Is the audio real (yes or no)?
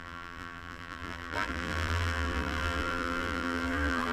no